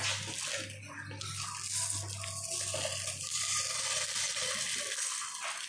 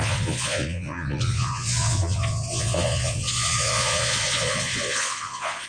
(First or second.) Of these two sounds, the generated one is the second